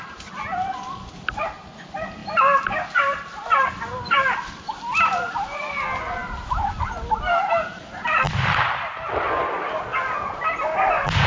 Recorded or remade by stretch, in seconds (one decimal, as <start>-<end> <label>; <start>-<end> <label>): 0.0-11.3 recorded